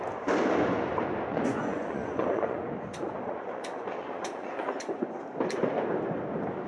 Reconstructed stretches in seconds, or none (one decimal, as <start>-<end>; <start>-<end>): 1.3-5.1